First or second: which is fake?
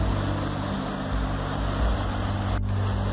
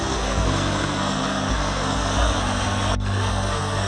second